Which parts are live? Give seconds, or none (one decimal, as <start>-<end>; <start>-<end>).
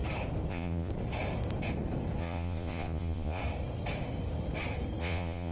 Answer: 0.0-0.5; 0.9-2.2; 3.4-5.0